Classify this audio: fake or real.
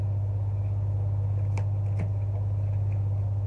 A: real